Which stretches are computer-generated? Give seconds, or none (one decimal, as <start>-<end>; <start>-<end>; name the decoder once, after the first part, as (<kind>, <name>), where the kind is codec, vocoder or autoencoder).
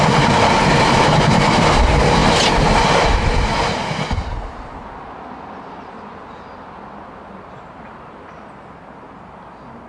none